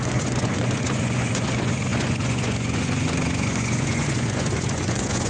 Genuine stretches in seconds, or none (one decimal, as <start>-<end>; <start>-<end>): none